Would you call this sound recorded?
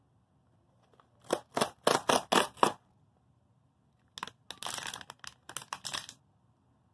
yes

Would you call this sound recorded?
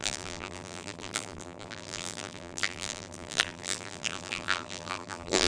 no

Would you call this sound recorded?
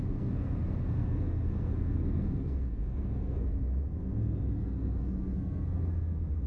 no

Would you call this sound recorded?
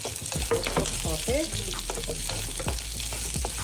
yes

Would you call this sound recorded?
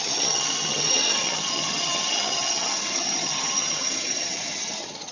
no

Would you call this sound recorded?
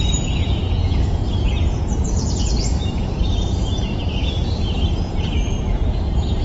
no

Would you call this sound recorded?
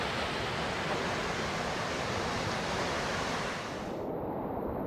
yes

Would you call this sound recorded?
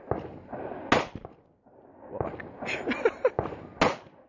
yes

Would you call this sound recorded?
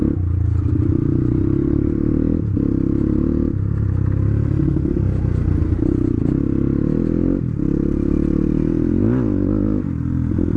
yes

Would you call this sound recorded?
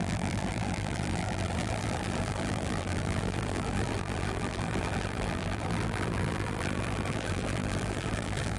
no